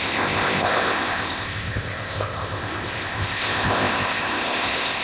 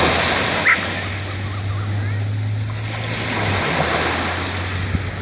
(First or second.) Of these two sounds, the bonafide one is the second